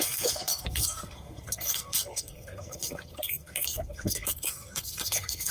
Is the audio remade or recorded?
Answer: remade